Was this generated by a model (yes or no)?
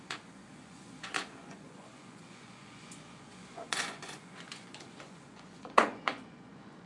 yes